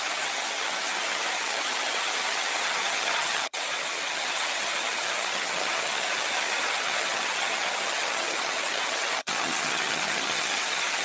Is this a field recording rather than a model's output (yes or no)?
no